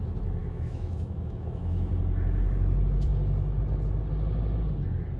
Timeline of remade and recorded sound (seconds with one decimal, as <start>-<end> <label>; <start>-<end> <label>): 0.0-0.4 recorded; 0.4-1.9 remade; 1.9-5.2 recorded